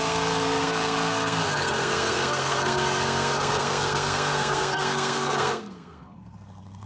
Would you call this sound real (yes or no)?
no